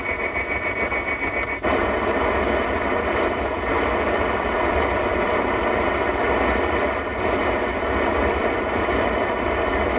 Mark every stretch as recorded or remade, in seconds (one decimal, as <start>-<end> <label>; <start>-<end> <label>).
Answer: 0.0-7.1 remade; 7.1-7.8 recorded; 7.8-10.0 remade